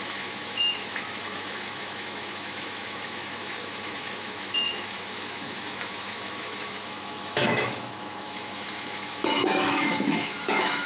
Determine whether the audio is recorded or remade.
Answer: remade